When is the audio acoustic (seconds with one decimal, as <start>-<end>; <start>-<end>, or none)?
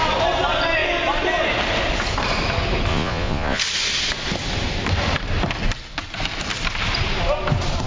0.0-2.9; 3.6-7.9